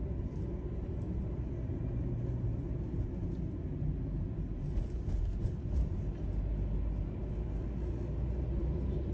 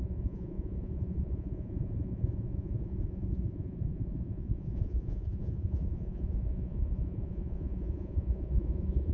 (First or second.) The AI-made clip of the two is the second